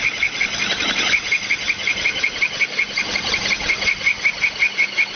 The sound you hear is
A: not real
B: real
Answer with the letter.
B